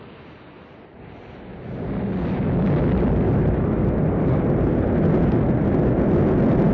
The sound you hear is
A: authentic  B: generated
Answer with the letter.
A